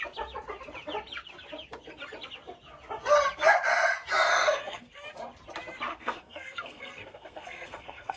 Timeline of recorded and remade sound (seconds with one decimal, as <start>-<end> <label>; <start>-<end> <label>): 0.0-4.3 recorded; 4.3-4.9 remade; 4.9-5.9 recorded; 5.9-8.2 remade